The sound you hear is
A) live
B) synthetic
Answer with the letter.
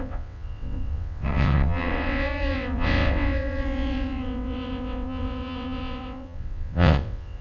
B